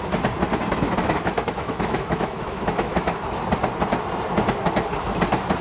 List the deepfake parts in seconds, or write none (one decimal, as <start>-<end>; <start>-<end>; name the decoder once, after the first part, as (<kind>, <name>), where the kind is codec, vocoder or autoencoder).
1.0-3.2 (autoencoder, DAC-VAE)